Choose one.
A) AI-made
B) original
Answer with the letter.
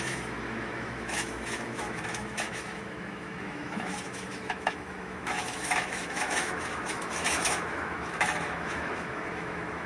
A